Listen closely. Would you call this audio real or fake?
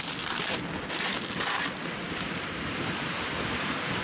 real